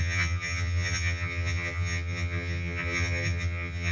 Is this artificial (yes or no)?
yes